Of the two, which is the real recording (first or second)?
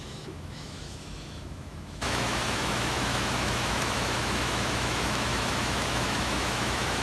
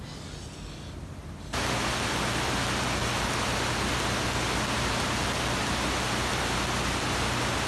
second